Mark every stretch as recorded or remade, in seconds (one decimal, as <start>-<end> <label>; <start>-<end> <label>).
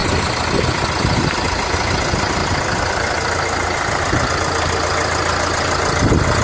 0.0-6.4 recorded